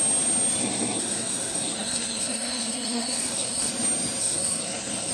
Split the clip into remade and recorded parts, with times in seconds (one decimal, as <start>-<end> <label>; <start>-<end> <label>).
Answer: 0.0-0.6 recorded; 0.6-3.7 remade; 3.7-4.2 recorded; 4.2-5.1 remade